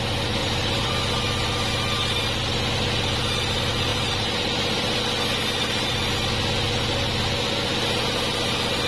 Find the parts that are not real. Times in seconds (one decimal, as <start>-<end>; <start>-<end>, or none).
0.4-0.9; 3.9-5.0